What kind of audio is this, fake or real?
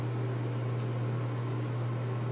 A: real